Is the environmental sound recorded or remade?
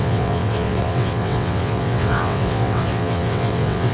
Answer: remade